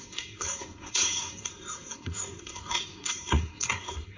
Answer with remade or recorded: remade